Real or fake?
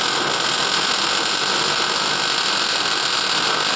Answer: real